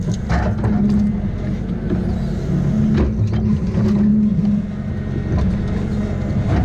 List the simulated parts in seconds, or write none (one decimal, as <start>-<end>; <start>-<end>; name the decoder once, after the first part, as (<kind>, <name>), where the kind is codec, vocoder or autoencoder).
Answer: none